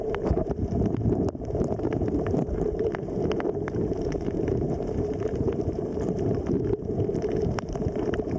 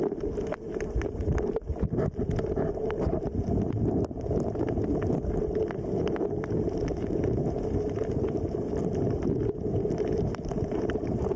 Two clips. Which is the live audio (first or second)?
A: second